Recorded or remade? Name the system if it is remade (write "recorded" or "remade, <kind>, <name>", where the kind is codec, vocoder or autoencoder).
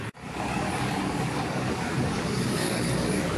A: remade, codec, DAC